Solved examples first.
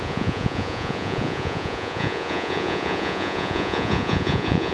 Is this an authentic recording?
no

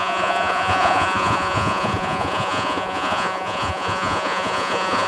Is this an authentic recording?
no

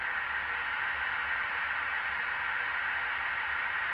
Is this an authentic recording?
yes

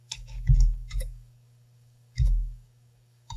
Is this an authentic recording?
no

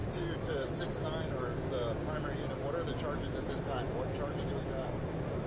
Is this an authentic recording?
yes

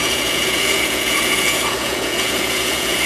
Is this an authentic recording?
no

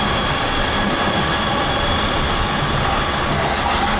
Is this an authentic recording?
yes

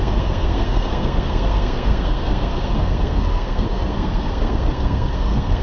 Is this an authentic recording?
no